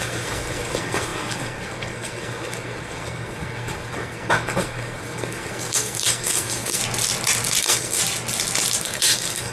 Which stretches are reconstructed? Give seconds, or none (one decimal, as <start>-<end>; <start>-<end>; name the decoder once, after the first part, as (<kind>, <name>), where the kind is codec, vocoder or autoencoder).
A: 0.0-6.8 (codec, SNAC); 7.6-8.0; 8.8-9.5